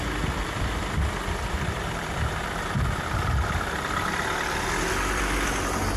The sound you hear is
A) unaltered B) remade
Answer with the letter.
B